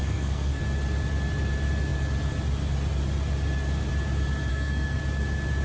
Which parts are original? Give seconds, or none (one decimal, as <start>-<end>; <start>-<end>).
0.6-4.5; 5.0-5.6